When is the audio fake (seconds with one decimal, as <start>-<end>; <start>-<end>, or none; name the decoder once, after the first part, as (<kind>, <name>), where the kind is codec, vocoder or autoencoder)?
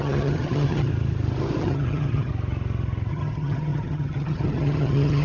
0.0-0.9 (vocoder, HiFi-GAN); 1.6-2.3; 3.1-5.2